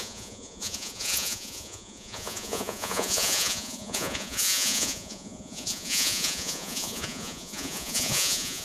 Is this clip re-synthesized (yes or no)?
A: yes